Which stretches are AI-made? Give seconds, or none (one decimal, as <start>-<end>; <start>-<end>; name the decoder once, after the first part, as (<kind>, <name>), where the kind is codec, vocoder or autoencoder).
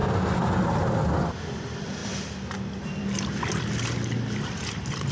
2.0-3.0 (vocoder, BigVGAN v2)